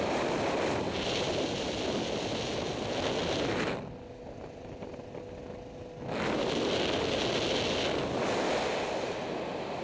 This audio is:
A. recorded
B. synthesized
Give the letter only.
A